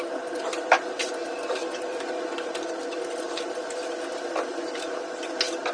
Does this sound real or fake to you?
real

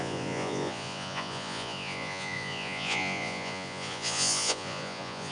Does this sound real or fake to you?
fake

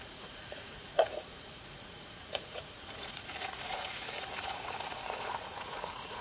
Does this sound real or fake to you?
fake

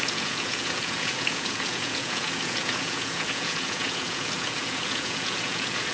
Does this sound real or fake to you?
fake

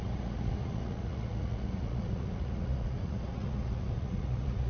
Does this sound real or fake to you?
fake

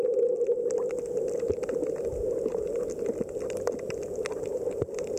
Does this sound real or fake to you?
real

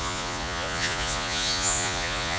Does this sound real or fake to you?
fake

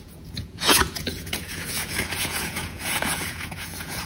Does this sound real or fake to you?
fake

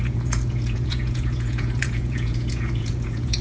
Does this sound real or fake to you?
fake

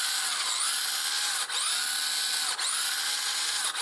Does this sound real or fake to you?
real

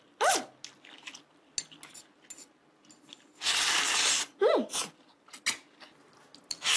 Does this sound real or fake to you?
real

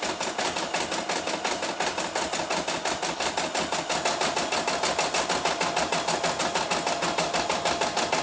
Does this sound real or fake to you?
real